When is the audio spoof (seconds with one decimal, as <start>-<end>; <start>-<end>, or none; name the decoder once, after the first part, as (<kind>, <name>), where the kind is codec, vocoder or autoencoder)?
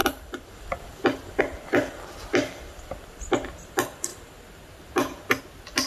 0.0-1.4 (vocoder, BigVGAN v2)